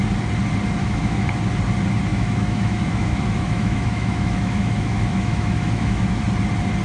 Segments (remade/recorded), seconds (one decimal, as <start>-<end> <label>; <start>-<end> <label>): 0.0-0.8 recorded; 0.8-1.3 remade; 1.3-2.1 recorded; 2.1-6.2 remade; 6.2-6.8 recorded